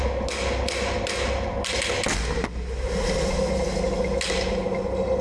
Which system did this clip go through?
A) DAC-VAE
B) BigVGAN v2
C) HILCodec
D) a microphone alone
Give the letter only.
D